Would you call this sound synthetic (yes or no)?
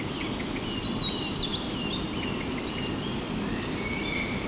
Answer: no